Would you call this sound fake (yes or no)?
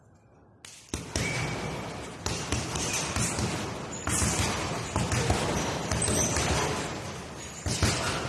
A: no